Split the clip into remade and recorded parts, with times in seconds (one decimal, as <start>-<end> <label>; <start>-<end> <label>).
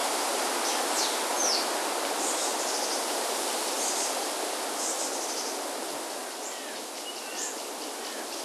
0.0-8.4 recorded